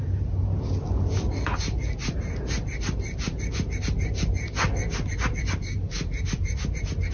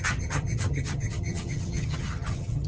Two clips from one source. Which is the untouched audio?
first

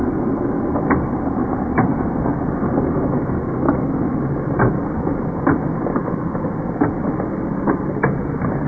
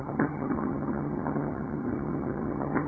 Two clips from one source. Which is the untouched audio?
first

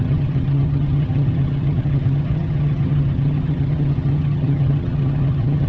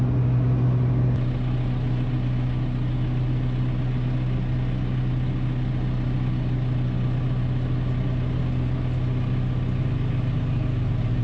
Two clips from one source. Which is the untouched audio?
second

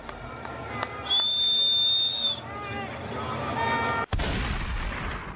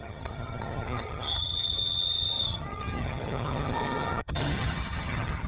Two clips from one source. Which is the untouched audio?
first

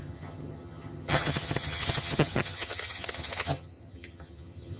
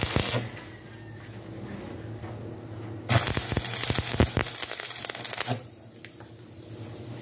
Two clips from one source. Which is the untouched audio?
second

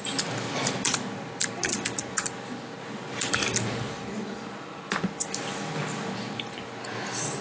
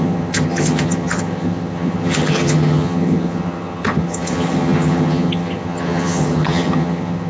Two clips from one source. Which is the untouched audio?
first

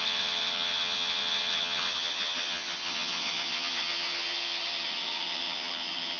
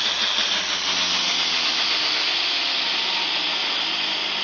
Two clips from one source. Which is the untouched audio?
second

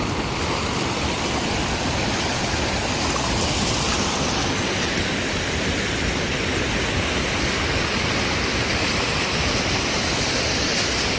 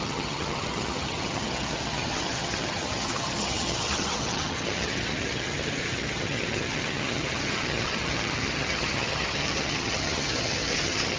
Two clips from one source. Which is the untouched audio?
first